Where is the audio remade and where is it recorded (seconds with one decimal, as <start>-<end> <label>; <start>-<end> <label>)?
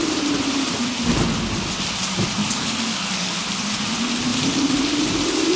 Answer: 0.0-2.4 recorded; 2.4-3.4 remade; 3.4-5.6 recorded